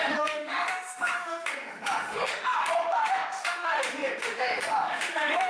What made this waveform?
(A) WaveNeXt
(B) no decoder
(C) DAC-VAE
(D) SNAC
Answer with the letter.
C